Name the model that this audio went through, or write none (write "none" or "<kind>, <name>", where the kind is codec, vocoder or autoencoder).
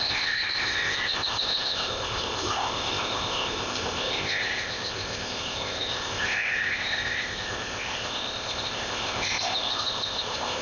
codec, ZipCodec